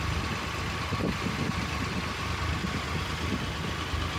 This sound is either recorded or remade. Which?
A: recorded